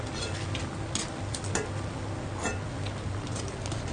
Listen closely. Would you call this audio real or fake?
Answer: real